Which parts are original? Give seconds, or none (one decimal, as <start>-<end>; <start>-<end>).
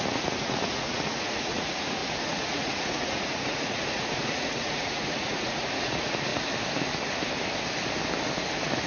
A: 6.3-8.9